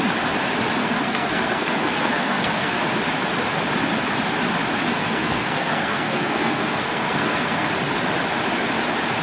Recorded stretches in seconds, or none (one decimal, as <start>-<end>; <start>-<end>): 0.0-0.8; 2.8-4.9; 7.7-9.2